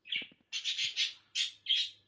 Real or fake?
real